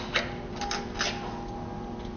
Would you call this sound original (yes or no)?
yes